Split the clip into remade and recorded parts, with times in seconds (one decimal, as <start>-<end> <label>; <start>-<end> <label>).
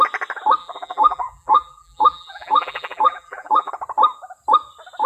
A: 0.0-0.6 recorded; 0.6-3.7 remade; 3.7-5.1 recorded